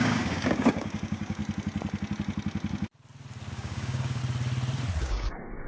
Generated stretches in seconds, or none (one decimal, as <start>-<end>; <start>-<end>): 0.0-1.4; 3.5-4.2; 5.0-5.7